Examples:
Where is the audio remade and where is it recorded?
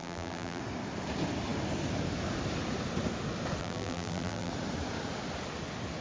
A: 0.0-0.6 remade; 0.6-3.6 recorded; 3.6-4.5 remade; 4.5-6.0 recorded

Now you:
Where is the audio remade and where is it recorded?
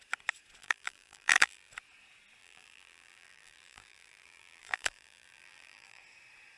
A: 0.0-0.6 recorded; 0.6-1.7 remade; 1.7-2.4 recorded; 2.4-6.0 remade; 6.0-6.6 recorded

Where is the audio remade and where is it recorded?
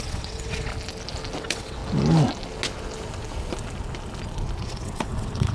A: 0.0-0.7 remade; 0.7-1.4 recorded; 1.4-1.8 remade; 1.8-4.6 recorded; 4.6-5.5 remade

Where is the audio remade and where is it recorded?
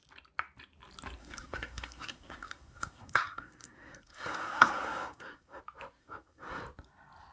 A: 0.0-1.2 recorded; 1.2-5.6 remade; 5.6-6.0 recorded; 6.0-6.6 remade; 6.6-7.3 recorded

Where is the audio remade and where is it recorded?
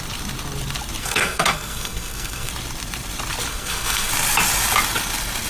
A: 0.0-1.0 recorded; 1.0-2.5 remade; 2.5-3.5 recorded; 3.5-4.1 remade; 4.1-5.5 recorded